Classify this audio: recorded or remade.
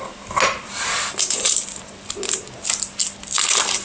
recorded